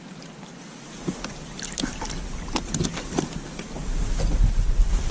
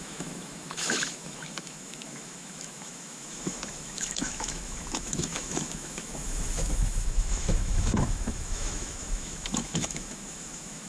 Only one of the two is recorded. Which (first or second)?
first